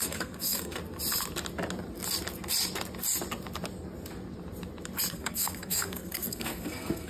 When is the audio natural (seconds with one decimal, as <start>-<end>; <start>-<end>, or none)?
0.8-5.1